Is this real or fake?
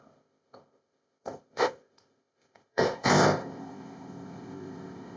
fake